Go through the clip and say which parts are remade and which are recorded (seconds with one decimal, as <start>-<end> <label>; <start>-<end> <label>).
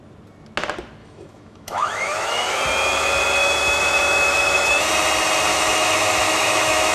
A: 0.0-1.0 recorded; 1.0-2.6 remade; 2.6-3.4 recorded; 3.4-4.9 remade; 4.9-5.5 recorded; 5.5-6.9 remade